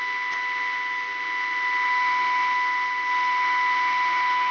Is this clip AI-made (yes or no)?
yes